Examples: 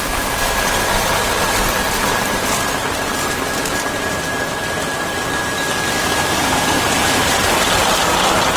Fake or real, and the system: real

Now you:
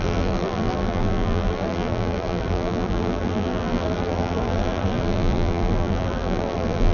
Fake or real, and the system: fake, vocoder, BigVGAN v2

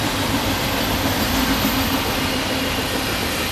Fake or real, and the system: real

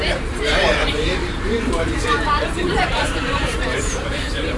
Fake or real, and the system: fake, vocoder, BigVGAN v2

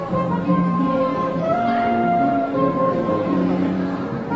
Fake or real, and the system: fake, vocoder, BigVGAN v2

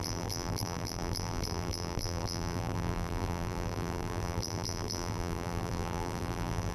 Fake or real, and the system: fake, vocoder, BigVGAN v2